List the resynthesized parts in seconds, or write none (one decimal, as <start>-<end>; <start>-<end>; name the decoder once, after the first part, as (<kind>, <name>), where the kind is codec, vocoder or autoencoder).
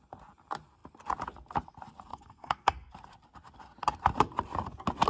2.1-2.9 (codec, SNAC)